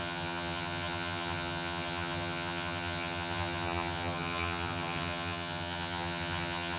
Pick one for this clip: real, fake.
fake